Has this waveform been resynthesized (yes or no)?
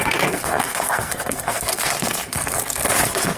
yes